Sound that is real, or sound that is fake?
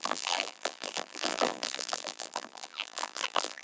fake